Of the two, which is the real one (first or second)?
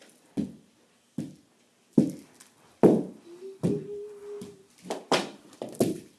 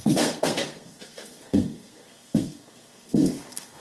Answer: first